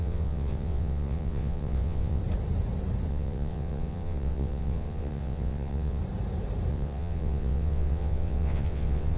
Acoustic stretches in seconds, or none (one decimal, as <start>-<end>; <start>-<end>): 2.2-3.1; 6.0-6.7